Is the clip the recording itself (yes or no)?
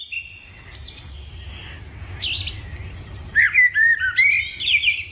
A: yes